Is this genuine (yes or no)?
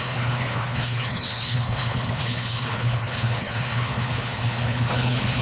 no